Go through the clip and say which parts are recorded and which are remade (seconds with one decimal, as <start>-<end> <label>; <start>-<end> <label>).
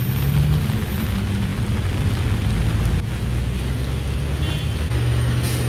0.0-5.7 recorded